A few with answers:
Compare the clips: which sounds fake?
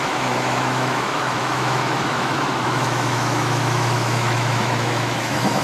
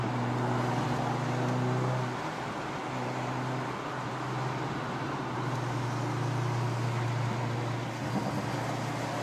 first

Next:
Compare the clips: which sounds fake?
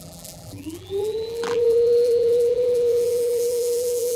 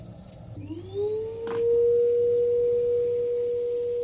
first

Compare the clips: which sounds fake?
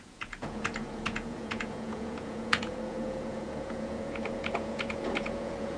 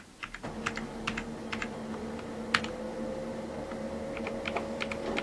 first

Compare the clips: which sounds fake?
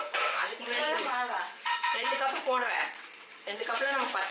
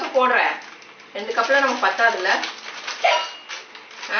first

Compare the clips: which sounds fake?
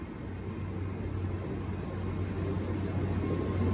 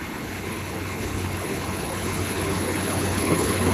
second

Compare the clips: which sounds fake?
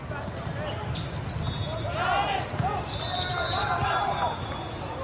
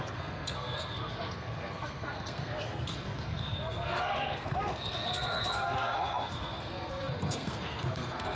second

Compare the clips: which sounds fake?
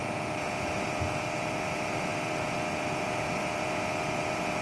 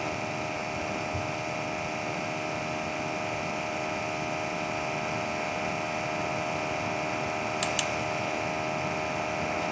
first